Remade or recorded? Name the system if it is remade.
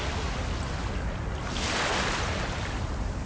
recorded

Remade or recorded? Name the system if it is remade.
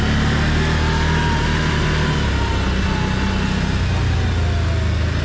recorded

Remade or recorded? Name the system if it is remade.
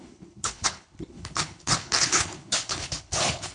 remade, codec, HILCodec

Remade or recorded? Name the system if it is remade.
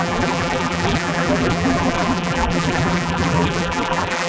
remade, vocoder, BigVGAN v2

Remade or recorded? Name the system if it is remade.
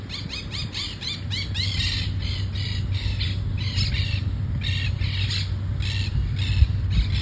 recorded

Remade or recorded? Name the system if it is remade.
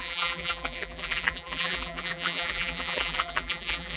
remade, vocoder, BigVGAN v2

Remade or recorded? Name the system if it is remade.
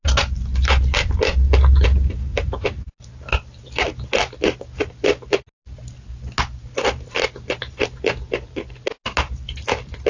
recorded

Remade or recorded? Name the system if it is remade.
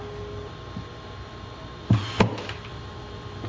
recorded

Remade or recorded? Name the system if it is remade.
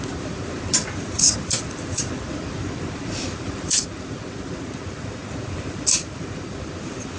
remade, vocoder, BigVGAN v2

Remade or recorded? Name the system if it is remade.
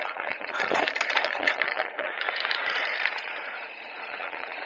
remade, vocoder, Vocos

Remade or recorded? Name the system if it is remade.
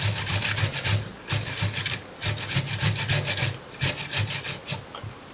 recorded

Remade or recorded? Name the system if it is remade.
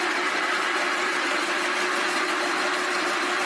recorded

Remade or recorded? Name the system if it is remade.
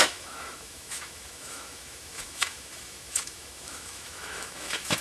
remade, autoencoder, DAC-VAE